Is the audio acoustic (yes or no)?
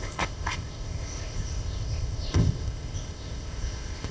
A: no